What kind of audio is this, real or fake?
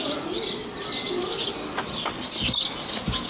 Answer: real